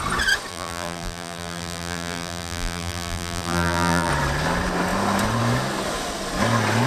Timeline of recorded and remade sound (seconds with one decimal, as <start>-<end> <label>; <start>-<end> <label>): 0.0-0.5 recorded; 0.5-4.1 remade; 4.1-6.9 recorded